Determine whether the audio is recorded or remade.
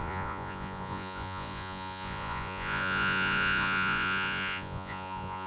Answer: remade